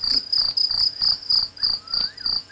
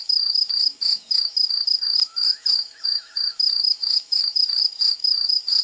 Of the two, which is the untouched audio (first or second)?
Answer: first